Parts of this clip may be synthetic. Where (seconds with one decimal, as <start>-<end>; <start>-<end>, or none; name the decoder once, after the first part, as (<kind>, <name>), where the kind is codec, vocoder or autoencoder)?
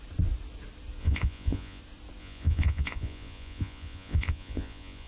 1.0-1.8 (vocoder, Vocos); 2.2-5.1